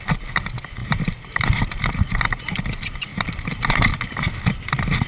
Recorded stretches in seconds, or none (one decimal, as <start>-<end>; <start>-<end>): 0.0-0.8; 2.2-3.1; 4.1-5.1